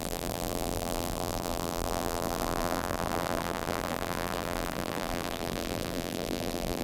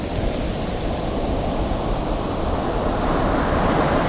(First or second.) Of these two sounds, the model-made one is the first